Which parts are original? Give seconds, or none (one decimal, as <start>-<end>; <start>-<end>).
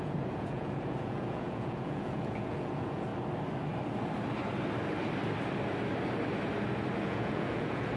3.1-7.0